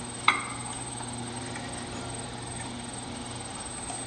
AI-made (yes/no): no